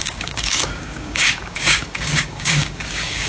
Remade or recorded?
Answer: remade